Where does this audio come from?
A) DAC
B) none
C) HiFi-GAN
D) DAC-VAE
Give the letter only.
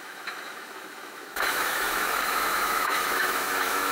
D